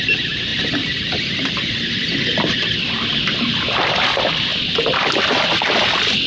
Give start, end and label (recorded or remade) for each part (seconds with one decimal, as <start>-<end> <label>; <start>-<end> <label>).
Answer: 0.0-0.5 recorded; 0.5-3.8 remade; 3.8-4.5 recorded; 4.5-6.3 remade